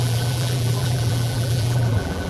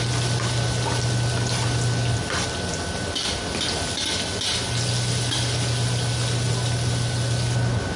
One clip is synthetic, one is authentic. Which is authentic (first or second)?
second